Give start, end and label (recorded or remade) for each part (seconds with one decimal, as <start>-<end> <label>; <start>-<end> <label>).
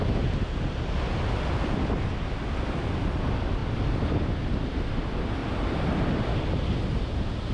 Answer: 0.0-3.6 recorded; 3.6-4.8 remade; 4.8-5.4 recorded; 5.4-6.4 remade; 6.4-7.5 recorded